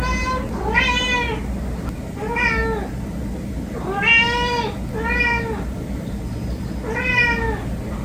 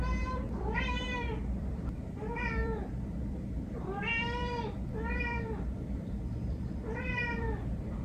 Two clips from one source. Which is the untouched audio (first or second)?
first